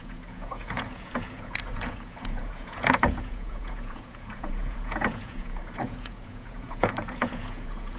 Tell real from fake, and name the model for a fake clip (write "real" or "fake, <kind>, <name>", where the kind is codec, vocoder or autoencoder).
fake, vocoder, Vocos